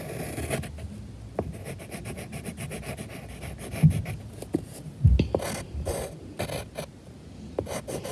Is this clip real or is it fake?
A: real